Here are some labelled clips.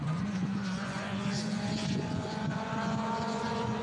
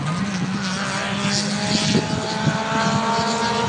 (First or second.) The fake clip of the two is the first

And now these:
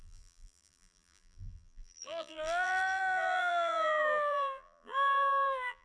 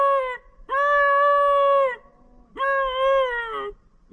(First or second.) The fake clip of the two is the first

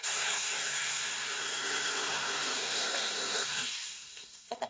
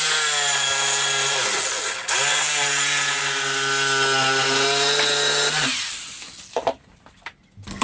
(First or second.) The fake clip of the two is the first